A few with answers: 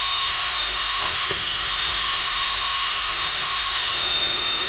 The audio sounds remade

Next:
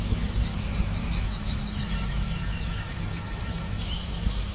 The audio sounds remade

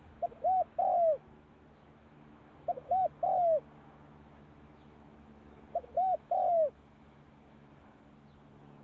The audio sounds remade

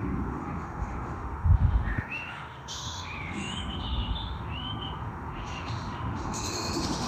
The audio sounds remade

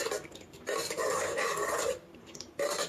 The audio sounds recorded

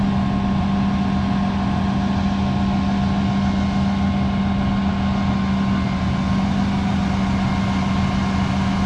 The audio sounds recorded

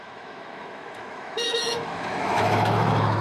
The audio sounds remade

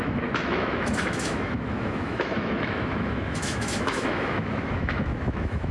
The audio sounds remade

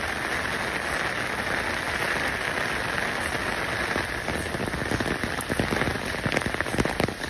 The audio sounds recorded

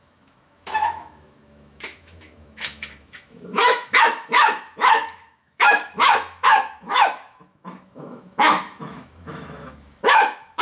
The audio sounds remade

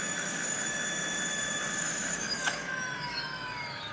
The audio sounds remade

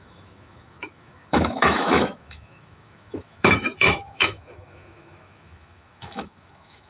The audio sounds remade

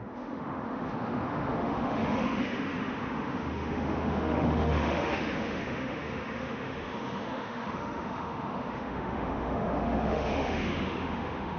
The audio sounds remade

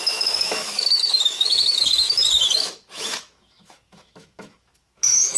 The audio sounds remade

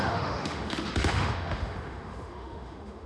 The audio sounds remade